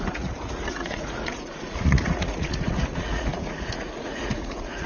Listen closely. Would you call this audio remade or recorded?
remade